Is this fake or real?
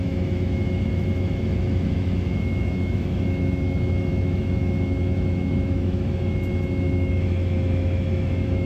fake